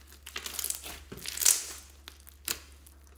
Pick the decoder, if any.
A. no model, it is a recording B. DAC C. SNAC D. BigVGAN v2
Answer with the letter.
A